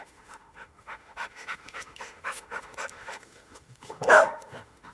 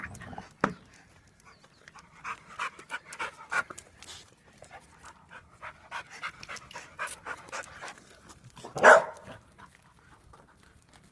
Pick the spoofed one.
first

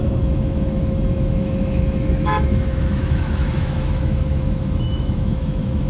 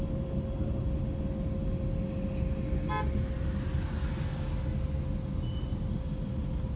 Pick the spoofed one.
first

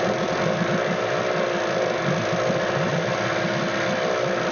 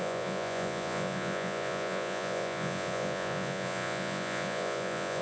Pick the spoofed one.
second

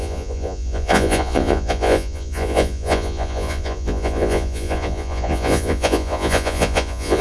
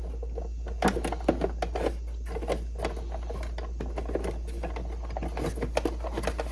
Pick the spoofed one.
first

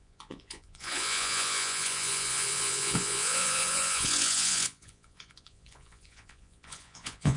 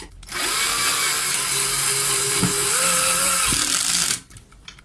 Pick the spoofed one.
first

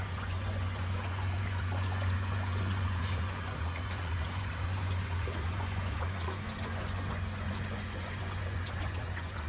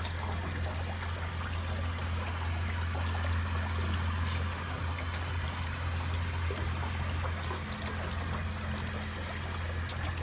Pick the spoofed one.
first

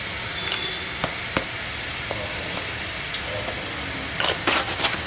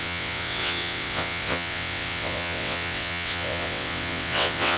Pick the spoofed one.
second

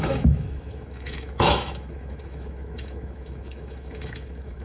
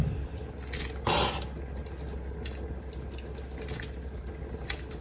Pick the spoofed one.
first